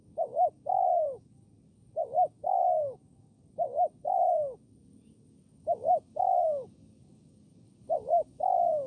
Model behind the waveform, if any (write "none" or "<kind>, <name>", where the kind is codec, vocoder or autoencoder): codec, DAC